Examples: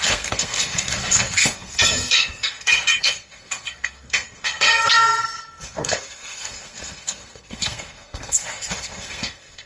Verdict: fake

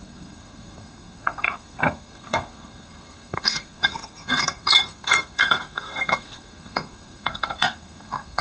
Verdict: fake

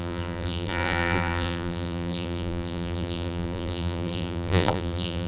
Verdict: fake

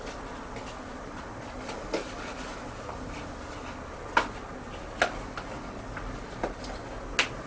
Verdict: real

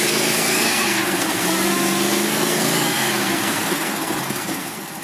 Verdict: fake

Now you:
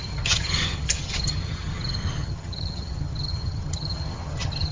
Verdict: fake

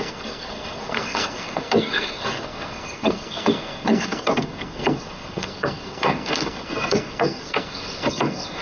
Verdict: fake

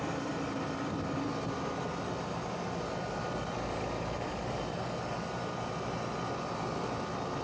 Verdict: real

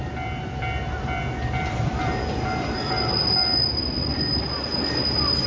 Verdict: real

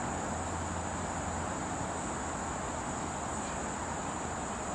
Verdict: real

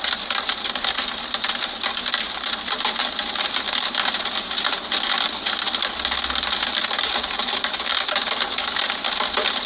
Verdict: real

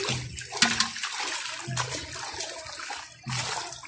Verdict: real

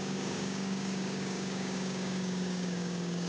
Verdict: fake